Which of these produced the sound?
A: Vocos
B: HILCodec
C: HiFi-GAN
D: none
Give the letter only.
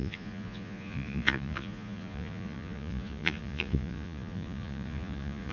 A